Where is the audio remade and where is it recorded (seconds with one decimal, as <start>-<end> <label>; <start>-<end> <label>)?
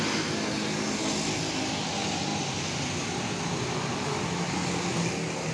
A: 0.0-5.5 recorded